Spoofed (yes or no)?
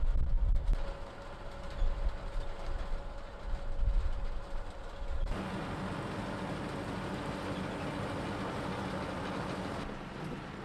no